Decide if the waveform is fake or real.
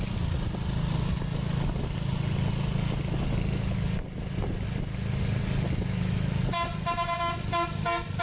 real